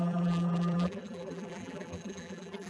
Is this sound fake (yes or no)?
yes